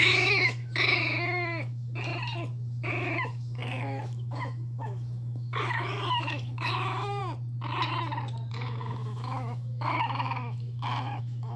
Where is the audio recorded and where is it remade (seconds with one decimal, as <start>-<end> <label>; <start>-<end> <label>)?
0.0-2.1 remade; 2.1-2.9 recorded; 2.9-7.2 remade; 7.2-8.5 recorded; 8.5-11.6 remade